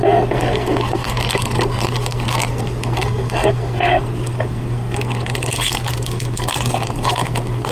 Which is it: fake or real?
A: fake